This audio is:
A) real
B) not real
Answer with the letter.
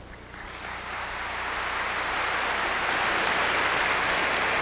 A